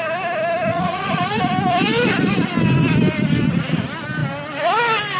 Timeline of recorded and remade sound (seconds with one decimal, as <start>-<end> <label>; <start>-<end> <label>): 0.0-0.7 recorded; 0.7-1.4 remade; 1.4-5.2 recorded